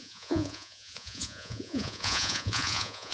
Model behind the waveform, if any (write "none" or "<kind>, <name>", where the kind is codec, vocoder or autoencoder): vocoder, Vocos